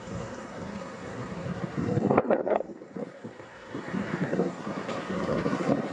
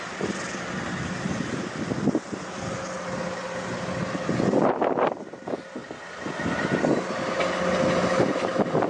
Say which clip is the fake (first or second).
first